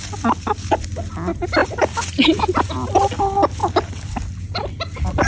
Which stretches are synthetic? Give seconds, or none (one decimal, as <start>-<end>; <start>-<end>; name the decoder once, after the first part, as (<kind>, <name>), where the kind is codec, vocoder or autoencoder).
1.6-2.7 (vocoder, BigVGAN v2)

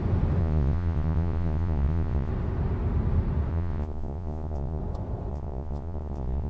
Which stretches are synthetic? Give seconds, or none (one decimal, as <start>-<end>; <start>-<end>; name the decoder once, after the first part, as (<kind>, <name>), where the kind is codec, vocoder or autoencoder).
0.4-2.3 (vocoder, Vocos); 3.5-4.8; 5.3-6.5

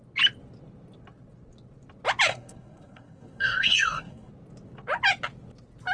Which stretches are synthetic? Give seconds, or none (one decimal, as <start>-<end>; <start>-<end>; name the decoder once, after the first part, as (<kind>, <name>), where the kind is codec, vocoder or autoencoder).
2.3-4.3 (codec, SNAC)

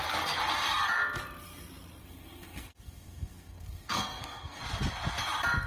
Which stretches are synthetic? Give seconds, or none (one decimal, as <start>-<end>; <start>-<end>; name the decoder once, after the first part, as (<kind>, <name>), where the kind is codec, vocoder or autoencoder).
2.0-4.6 (codec, SNAC)

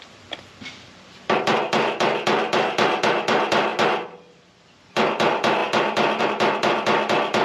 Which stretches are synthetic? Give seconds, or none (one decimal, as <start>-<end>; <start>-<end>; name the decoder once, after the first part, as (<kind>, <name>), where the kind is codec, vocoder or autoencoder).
0.0-3.7 (vocoder, BigVGAN v2); 4.3-7.4

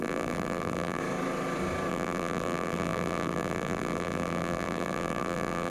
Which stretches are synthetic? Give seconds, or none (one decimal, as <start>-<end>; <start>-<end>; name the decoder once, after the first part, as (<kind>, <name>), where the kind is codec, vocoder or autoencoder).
0.0-1.0 (vocoder, BigVGAN v2); 1.9-5.7

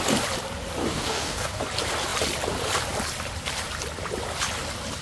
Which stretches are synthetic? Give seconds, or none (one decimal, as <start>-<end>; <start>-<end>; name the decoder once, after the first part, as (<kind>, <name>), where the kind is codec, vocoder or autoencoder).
0.8-1.6 (codec, DAC)

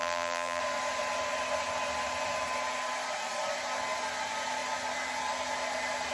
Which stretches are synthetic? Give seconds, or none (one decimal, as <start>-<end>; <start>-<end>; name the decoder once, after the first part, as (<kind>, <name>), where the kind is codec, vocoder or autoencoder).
0.0-0.6 (vocoder, BigVGAN v2)